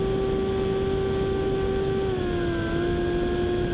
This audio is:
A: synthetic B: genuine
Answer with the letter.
B